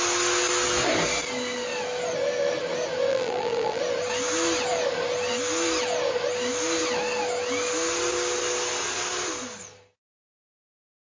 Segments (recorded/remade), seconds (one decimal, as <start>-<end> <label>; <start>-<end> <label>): 0.0-3.1 recorded; 3.1-3.8 remade; 3.8-11.1 recorded